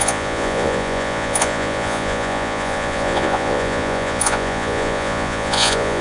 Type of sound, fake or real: fake